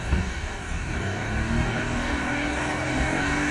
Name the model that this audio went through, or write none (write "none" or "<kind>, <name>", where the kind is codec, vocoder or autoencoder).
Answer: codec, DAC